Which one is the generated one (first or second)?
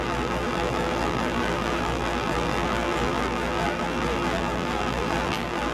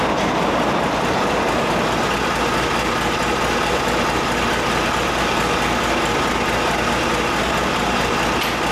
first